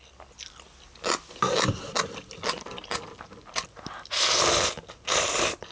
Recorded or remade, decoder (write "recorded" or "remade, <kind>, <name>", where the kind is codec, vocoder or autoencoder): recorded